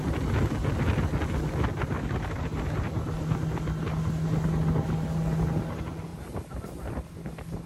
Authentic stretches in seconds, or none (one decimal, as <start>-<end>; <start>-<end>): 0.0-6.1; 6.9-7.7